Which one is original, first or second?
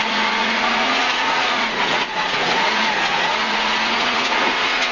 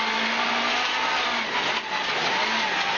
second